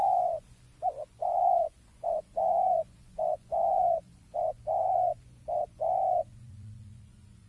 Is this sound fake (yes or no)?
yes